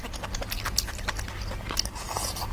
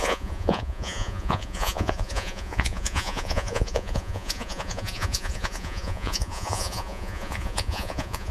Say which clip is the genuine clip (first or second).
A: first